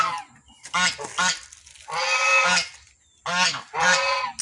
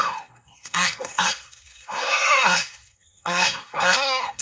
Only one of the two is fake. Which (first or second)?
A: second